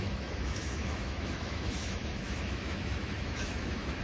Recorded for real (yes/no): no